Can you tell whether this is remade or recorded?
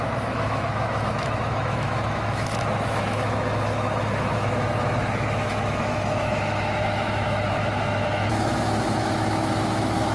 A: remade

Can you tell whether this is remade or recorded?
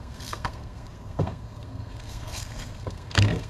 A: remade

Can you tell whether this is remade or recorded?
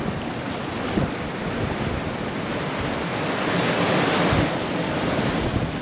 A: recorded